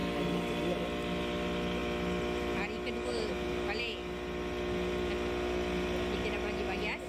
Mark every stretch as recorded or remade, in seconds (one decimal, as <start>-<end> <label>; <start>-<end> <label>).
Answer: 0.0-7.1 recorded